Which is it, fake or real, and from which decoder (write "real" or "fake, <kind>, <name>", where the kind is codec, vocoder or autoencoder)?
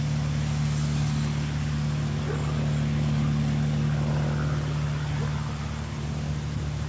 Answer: real